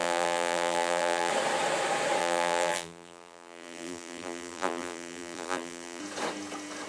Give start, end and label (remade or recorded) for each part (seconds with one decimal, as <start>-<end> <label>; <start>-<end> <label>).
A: 0.0-1.3 remade; 1.3-2.2 recorded; 2.2-6.0 remade; 6.0-6.9 recorded